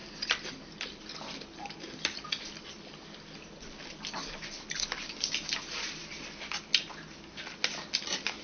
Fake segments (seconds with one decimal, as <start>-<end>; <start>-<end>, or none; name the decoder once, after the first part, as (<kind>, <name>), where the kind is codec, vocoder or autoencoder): none